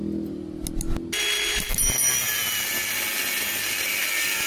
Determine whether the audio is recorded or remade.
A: recorded